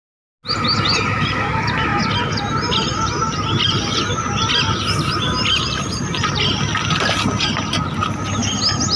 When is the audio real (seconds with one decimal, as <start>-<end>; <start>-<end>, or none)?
0.0-9.0